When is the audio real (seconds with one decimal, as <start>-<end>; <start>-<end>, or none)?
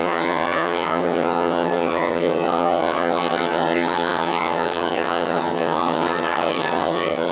none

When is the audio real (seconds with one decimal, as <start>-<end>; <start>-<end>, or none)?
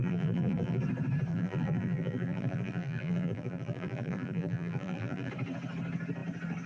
0.8-1.3; 5.3-6.7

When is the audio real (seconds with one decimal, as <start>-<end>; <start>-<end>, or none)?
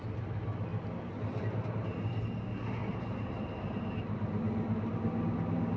0.0-2.8; 3.9-5.8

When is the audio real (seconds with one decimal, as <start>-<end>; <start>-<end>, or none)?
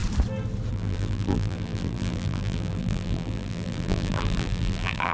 0.0-0.7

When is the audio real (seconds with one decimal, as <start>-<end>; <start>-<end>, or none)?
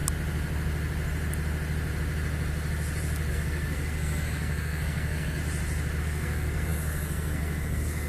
0.0-3.3; 5.4-6.0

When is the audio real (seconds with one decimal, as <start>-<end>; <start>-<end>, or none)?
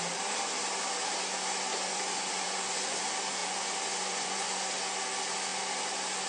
0.0-1.7; 3.0-3.4; 4.6-6.3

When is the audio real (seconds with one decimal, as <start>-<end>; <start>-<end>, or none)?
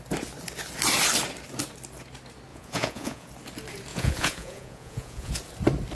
0.0-2.5; 3.3-3.9; 5.3-5.9